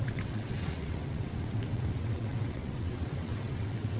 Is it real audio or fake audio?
fake